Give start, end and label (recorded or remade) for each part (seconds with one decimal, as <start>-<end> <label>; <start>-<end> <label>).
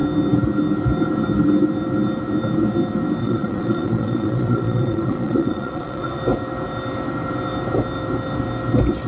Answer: 0.0-3.2 recorded; 3.2-6.2 remade; 6.2-9.1 recorded